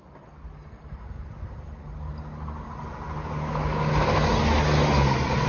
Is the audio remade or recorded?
recorded